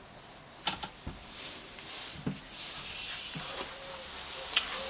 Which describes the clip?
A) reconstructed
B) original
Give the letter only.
B